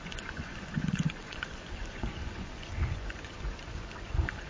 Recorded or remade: remade